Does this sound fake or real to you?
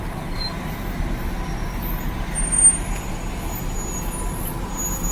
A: real